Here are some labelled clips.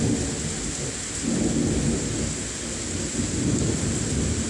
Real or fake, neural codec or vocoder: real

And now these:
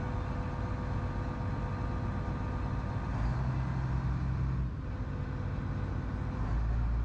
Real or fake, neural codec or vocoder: real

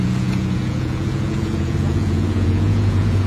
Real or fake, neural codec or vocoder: fake, vocoder, Vocos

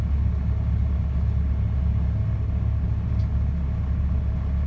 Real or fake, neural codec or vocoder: real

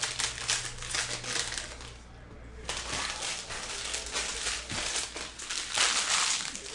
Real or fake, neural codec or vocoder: real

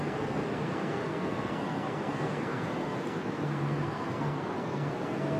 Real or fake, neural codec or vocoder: fake, codec, SNAC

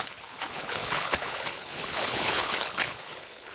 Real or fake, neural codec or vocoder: fake, codec, HILCodec